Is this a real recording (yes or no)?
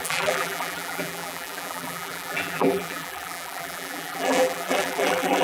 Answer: no